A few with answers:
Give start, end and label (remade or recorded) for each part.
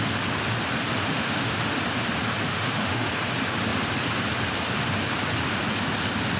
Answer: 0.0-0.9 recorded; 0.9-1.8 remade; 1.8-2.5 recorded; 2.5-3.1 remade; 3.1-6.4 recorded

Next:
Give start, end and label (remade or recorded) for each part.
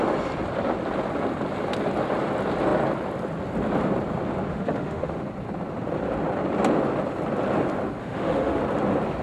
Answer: 0.0-4.5 recorded; 4.5-5.2 remade; 5.2-8.0 recorded; 8.0-8.6 remade; 8.6-9.2 recorded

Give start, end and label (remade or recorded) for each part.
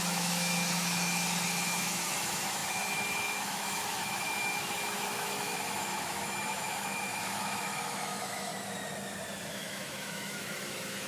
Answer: 0.0-8.5 remade; 8.5-9.5 recorded; 9.5-11.1 remade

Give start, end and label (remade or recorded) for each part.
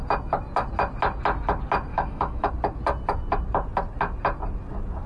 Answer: 0.0-1.9 recorded; 1.9-2.5 remade; 2.5-5.1 recorded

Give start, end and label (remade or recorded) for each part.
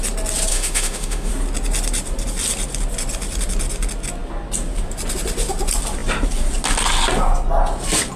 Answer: 0.0-0.5 recorded; 0.5-1.3 remade; 1.3-8.2 recorded